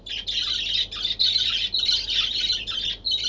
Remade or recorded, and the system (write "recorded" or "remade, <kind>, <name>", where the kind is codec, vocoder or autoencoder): recorded